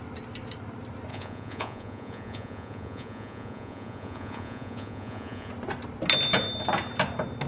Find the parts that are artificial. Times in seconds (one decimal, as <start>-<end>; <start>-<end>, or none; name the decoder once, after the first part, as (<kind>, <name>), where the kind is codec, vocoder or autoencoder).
1.1-5.5 (vocoder, Vocos)